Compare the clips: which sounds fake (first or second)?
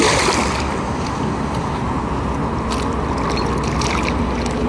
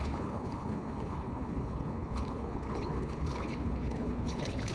second